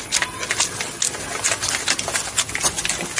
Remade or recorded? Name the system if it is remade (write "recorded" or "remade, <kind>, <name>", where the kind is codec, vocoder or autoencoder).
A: recorded